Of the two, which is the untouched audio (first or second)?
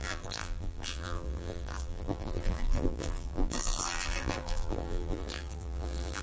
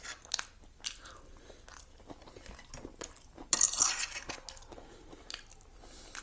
second